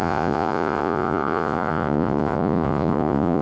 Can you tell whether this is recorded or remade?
remade